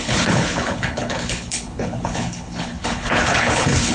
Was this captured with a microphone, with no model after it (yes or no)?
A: no